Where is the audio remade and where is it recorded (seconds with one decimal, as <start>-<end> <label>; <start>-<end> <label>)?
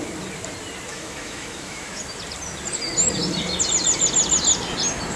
0.0-0.9 recorded; 0.9-2.0 remade; 2.0-5.2 recorded